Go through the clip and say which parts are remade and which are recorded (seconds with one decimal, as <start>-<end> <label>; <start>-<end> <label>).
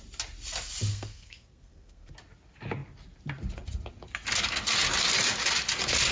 0.0-0.9 recorded; 0.9-2.1 remade; 2.1-6.1 recorded